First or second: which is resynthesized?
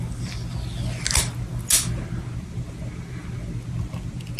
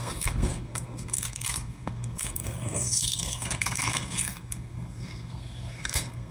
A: second